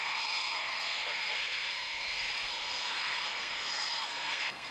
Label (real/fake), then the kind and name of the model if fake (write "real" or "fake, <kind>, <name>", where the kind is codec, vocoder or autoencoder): fake, codec, SNAC